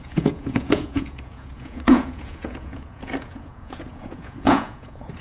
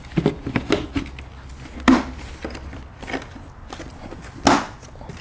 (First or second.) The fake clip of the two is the first